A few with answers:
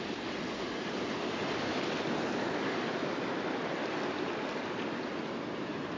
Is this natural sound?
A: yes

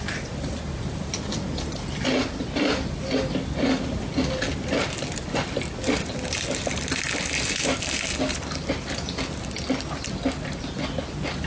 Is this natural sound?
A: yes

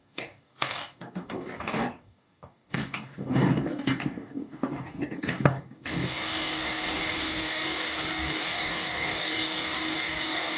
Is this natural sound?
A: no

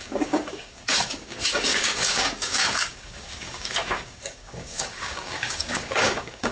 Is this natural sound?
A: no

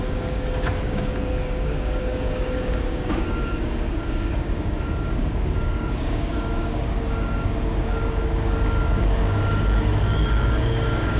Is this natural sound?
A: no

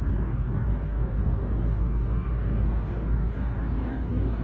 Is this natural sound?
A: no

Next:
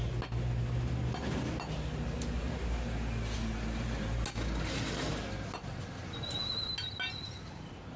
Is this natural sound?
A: yes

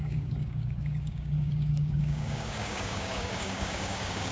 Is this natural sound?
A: no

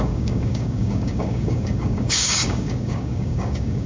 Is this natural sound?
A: no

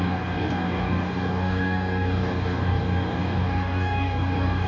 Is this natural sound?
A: no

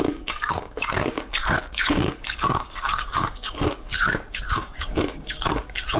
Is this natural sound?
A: no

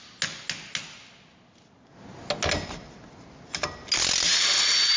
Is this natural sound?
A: yes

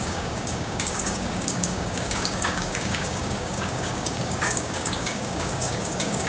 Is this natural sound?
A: no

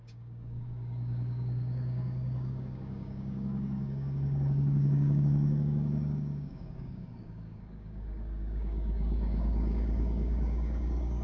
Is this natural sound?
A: no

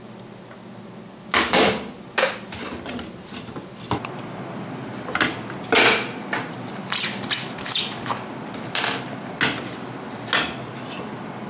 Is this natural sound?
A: yes